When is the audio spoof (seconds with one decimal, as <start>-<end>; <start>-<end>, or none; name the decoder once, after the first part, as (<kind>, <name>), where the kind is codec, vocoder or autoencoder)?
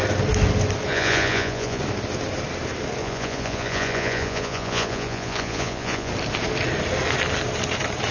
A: 0.9-1.8 (vocoder, Vocos); 3.0-6.1